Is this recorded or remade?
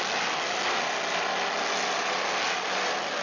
recorded